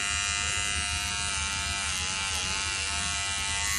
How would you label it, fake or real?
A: real